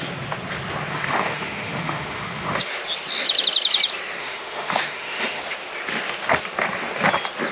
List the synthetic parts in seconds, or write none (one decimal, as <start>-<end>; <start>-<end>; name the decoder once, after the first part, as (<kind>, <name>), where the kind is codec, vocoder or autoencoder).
0.9-2.6 (autoencoder, DAC-VAE); 4.2-5.4